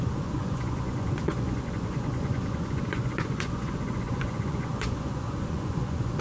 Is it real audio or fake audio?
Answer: fake